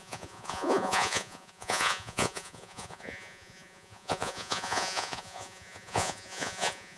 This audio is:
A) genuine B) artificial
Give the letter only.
B